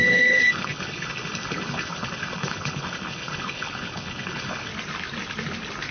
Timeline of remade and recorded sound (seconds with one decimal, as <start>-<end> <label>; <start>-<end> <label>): 0.0-4.7 remade; 4.7-5.9 recorded